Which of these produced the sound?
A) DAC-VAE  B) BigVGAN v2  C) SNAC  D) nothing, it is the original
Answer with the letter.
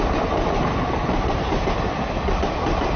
D